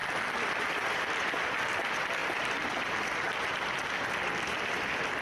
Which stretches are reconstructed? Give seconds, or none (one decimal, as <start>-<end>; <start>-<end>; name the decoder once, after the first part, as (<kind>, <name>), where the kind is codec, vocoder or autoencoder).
none